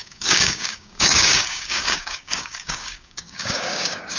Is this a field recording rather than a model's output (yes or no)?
no